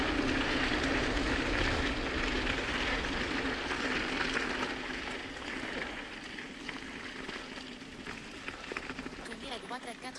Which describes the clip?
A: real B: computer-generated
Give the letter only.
A